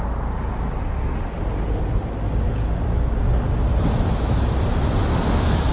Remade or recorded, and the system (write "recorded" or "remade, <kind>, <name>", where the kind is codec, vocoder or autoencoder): recorded